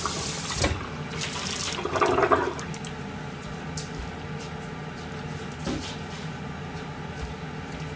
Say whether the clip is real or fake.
real